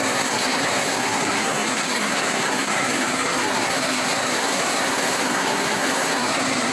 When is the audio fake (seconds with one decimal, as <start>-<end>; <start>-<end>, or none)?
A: 0.0-6.7